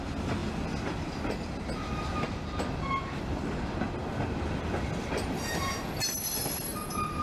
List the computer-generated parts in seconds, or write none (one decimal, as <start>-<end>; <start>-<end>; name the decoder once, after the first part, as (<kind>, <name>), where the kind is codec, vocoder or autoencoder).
none